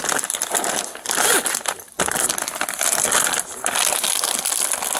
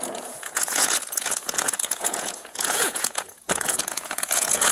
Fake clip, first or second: second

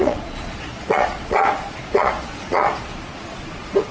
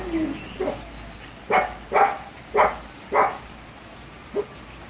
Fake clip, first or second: first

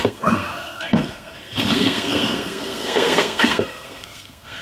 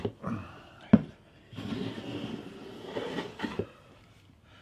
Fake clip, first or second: first